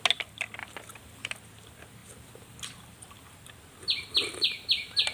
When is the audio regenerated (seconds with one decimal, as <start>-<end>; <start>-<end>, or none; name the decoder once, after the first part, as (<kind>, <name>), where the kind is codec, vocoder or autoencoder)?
0.6-1.3 (vocoder, BigVGAN v2); 2.0-3.1